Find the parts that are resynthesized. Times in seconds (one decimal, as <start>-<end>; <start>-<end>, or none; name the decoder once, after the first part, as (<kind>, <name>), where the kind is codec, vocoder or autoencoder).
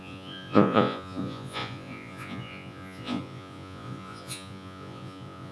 0.0-5.5 (vocoder, Vocos)